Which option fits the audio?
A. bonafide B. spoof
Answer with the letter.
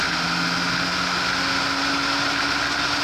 A